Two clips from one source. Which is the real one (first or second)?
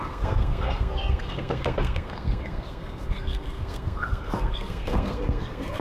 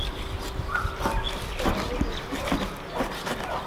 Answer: second